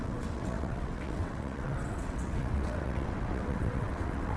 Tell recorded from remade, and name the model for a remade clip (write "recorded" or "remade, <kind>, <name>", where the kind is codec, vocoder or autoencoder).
remade, vocoder, WaveNeXt